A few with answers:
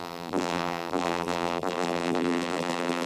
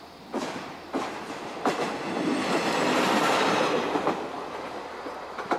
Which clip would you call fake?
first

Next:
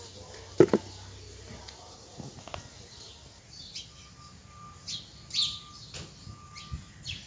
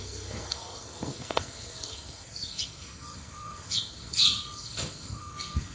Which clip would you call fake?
second